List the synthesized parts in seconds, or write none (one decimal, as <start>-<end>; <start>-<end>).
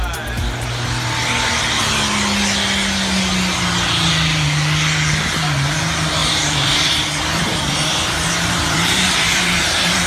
6.2-10.1